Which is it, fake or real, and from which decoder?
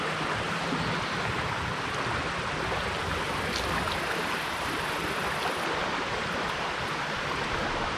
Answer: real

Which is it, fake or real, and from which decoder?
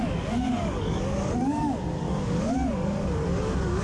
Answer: fake, codec, DAC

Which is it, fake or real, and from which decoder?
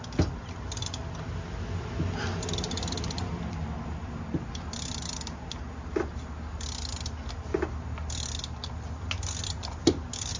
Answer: real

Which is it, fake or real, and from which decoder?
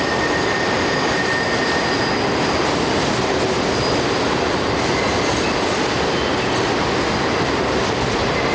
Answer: real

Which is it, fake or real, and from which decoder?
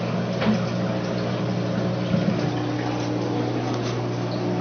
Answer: real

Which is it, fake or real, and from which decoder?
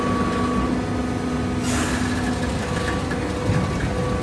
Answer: real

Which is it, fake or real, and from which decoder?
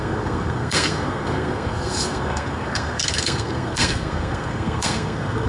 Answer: fake, codec, SNAC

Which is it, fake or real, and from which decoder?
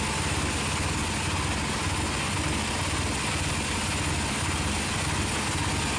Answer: real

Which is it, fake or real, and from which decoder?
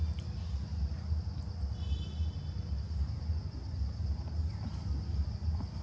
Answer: real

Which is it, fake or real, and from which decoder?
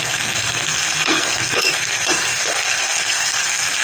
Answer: fake, codec, SNAC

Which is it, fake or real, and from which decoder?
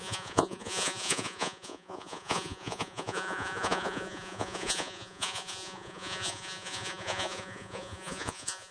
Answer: fake, vocoder, Vocos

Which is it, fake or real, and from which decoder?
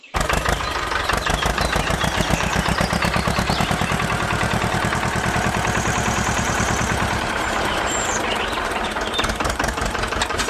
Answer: fake, vocoder, BigVGAN v2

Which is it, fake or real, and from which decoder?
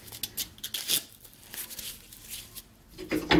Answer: real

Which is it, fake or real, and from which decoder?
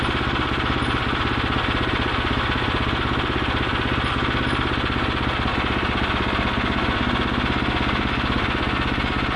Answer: real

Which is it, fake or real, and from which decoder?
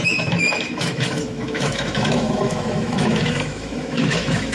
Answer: fake, autoencoder, DAC-VAE